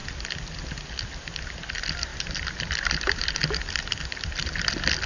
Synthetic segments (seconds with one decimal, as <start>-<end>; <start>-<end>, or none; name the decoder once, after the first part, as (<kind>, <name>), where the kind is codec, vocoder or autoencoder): 2.1-3.4 (vocoder, BigVGAN v2)